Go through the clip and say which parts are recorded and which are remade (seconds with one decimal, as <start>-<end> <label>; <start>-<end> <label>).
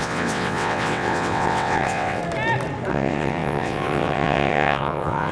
0.0-2.2 remade; 2.2-2.9 recorded; 2.9-5.3 remade